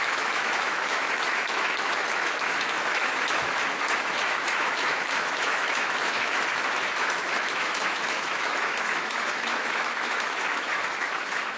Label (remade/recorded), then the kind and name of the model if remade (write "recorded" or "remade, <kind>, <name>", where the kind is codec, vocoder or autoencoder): remade, autoencoder, DAC-VAE